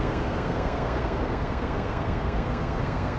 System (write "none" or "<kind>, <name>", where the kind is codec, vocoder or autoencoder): codec, SNAC